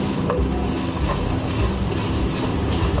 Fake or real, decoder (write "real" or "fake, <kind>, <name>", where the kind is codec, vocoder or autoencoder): real